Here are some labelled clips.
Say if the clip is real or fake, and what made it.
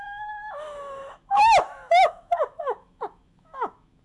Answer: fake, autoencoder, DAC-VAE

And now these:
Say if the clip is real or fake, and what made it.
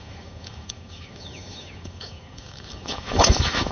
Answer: fake, autoencoder, DAC-VAE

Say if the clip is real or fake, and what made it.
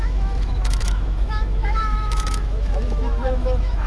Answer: fake, autoencoder, DAC-VAE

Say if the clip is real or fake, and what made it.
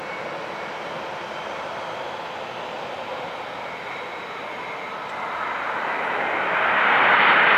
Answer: real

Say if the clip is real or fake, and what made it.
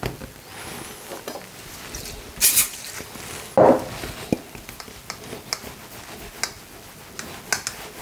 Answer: real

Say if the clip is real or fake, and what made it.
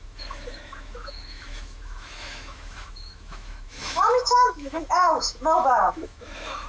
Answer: fake, autoencoder, DAC-VAE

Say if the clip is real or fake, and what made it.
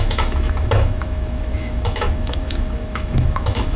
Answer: fake, autoencoder, DAC-VAE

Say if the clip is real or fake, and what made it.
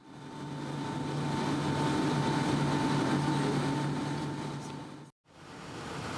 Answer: real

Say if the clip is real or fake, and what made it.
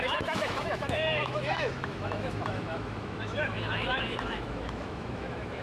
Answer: fake, autoencoder, DAC-VAE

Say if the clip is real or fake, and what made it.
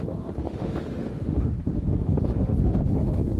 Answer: fake, autoencoder, DAC-VAE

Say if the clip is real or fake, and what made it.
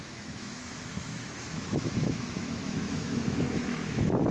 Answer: fake, autoencoder, DAC-VAE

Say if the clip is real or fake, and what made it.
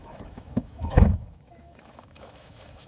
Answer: fake, autoencoder, DAC-VAE